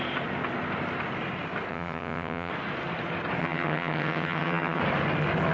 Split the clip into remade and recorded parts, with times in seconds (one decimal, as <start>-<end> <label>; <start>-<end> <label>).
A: 0.0-1.7 recorded; 1.7-2.5 remade; 2.5-3.4 recorded; 3.4-4.8 remade; 4.8-5.5 recorded